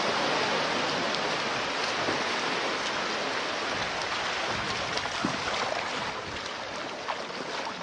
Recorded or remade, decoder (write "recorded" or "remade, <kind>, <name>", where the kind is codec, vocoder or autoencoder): recorded